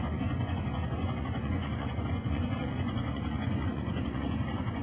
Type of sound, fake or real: fake